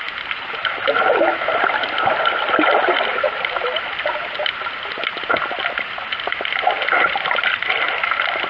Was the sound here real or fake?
real